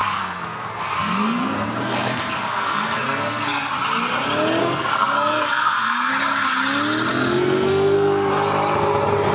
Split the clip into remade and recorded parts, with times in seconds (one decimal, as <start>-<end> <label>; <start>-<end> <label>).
0.0-3.7 remade; 3.7-4.6 recorded; 4.6-6.1 remade; 6.1-7.1 recorded; 7.1-8.3 remade; 8.3-9.3 recorded